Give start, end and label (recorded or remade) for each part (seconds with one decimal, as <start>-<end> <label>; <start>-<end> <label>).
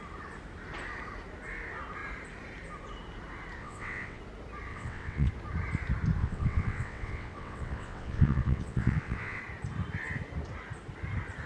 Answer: 0.0-3.6 recorded; 3.6-4.2 remade; 4.2-4.7 recorded; 4.7-5.3 remade; 5.3-6.2 recorded; 6.2-9.4 remade; 9.4-11.5 recorded